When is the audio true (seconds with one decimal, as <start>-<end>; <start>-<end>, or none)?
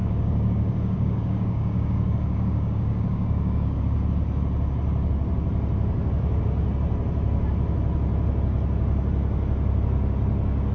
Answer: 3.8-10.7